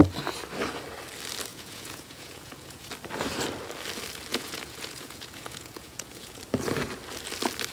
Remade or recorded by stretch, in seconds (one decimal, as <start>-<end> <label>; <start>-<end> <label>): 0.0-1.5 recorded; 1.5-2.9 remade; 2.9-4.3 recorded; 4.3-6.4 remade; 6.4-7.7 recorded